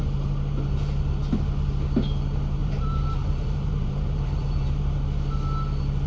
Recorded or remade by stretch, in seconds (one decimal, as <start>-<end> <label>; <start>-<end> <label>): 0.0-2.6 recorded; 2.6-5.0 remade; 5.0-6.1 recorded